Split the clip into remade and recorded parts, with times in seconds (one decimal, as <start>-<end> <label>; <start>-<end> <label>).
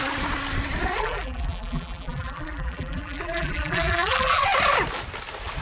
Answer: 0.0-1.0 recorded; 1.0-4.4 remade; 4.4-5.6 recorded